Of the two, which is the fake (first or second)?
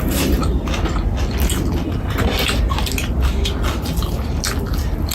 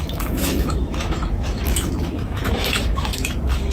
second